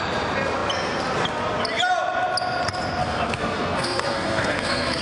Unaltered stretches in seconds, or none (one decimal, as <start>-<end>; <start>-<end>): 0.0-3.0